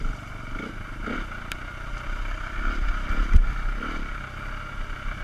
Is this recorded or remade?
recorded